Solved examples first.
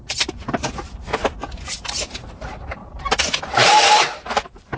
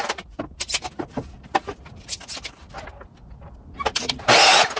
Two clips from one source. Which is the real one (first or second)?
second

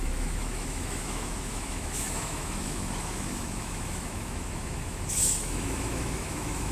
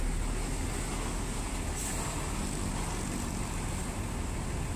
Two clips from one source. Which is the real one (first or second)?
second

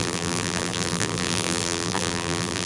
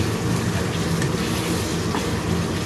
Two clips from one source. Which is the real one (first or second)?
second